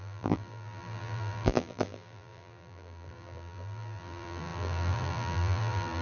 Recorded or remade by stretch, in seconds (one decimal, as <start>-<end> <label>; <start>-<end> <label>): 0.0-6.0 remade